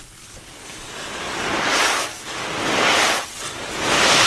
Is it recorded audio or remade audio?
recorded